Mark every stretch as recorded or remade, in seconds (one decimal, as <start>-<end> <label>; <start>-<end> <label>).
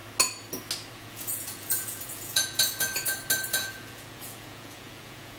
0.0-0.9 recorded; 0.9-2.9 remade; 2.9-3.5 recorded; 3.5-5.4 remade